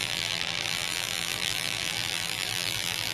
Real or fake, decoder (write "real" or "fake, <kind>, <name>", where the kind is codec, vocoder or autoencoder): fake, vocoder, BigVGAN v2